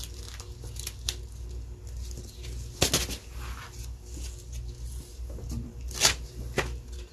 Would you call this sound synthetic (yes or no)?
no